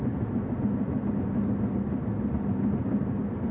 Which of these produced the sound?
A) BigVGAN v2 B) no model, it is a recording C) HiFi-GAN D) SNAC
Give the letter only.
B